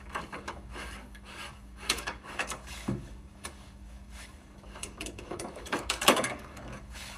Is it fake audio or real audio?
fake